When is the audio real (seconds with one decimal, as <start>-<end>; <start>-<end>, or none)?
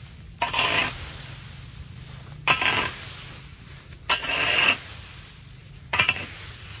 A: 0.0-5.6